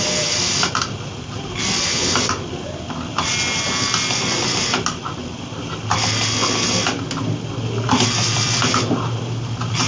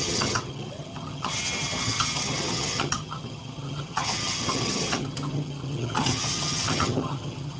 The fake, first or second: second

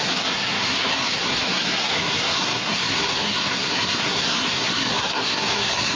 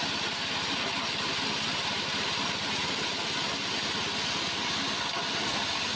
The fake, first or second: first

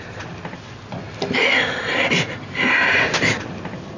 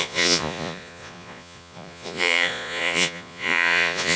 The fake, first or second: second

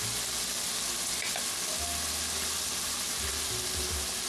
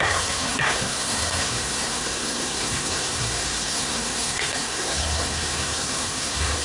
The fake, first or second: second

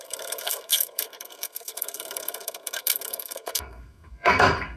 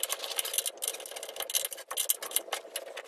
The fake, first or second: first